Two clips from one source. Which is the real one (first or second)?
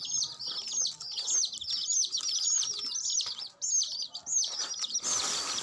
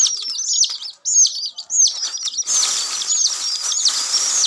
second